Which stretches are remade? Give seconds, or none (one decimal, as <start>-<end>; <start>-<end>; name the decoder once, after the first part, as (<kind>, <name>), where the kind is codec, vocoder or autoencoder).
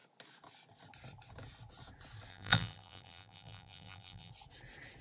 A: 2.3-4.3 (vocoder, BigVGAN v2)